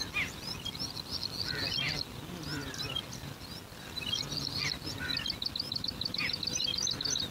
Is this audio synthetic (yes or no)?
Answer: no